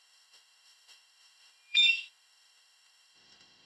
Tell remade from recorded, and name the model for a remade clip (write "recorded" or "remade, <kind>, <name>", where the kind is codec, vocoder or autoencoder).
remade, autoencoder, DAC-VAE